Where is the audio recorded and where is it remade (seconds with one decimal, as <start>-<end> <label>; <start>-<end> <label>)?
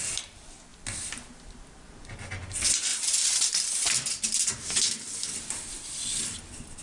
0.0-6.8 recorded